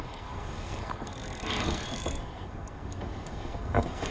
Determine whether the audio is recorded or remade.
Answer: remade